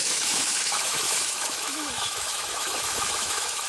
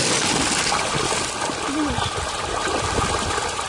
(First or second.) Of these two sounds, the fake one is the first